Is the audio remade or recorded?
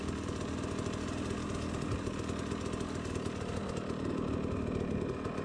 recorded